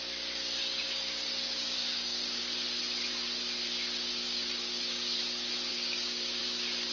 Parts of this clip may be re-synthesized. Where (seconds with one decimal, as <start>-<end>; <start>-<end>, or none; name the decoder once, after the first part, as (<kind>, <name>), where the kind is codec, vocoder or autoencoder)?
0.6-2.4 (codec, DAC); 4.1-5.2; 5.7-6.4